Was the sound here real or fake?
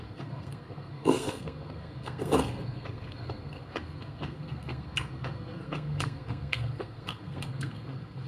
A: fake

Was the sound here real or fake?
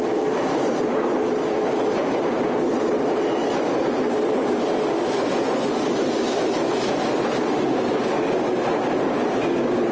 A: real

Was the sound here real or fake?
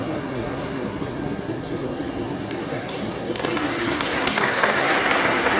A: fake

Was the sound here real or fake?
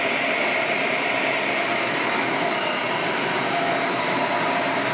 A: real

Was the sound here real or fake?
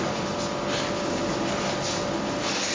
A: real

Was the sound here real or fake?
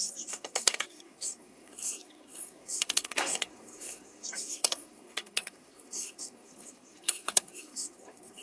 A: fake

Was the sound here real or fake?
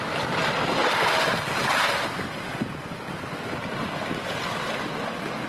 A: real